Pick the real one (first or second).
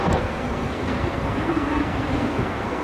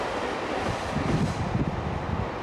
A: second